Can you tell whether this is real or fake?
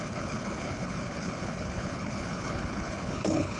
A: fake